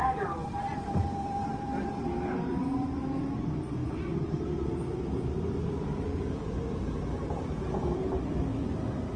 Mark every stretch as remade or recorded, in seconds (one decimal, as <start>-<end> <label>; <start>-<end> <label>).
0.0-0.4 recorded; 0.4-1.9 remade; 1.9-3.8 recorded; 3.8-7.6 remade; 7.6-9.2 recorded

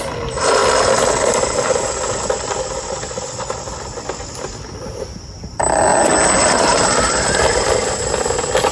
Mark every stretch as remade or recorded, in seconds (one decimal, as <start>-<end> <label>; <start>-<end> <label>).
0.0-0.6 remade; 0.6-5.2 recorded; 5.2-5.9 remade; 5.9-6.4 recorded; 6.4-8.7 remade

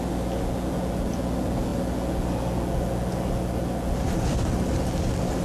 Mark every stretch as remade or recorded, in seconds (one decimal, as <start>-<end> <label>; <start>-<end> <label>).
0.0-5.4 recorded

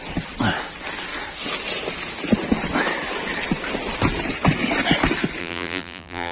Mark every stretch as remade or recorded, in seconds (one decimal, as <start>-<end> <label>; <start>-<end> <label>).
0.0-5.4 recorded; 5.4-6.3 remade